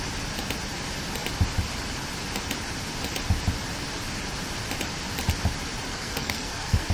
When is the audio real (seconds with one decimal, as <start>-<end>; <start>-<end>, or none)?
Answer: 0.0-5.9